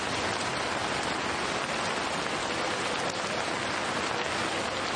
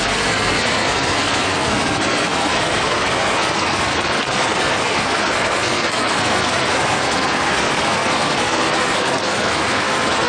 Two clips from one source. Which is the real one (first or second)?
first